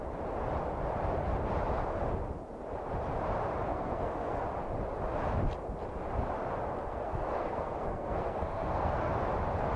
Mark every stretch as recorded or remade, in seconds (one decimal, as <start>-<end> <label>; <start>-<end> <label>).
0.0-3.7 recorded; 3.7-4.4 remade; 4.4-6.8 recorded; 6.8-9.1 remade; 9.1-9.8 recorded